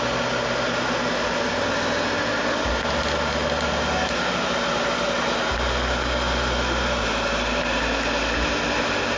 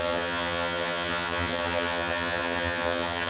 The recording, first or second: first